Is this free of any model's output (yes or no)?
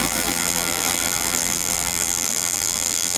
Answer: no